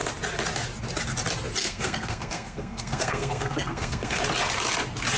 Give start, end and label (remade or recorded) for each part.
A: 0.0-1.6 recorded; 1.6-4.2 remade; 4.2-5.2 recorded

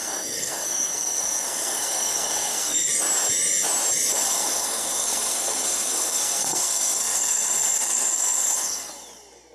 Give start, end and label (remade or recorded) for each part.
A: 0.0-2.9 remade; 2.9-4.1 recorded; 4.1-8.9 remade; 8.9-9.5 recorded

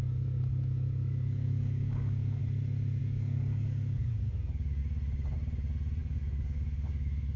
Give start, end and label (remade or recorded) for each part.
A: 0.0-2.4 remade; 2.4-3.0 recorded; 3.0-4.8 remade; 4.8-6.0 recorded; 6.0-7.4 remade

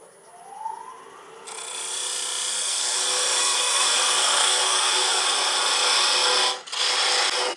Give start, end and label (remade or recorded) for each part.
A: 0.0-2.5 recorded; 2.5-3.0 remade; 3.0-3.4 recorded; 3.4-5.2 remade; 5.2-7.6 recorded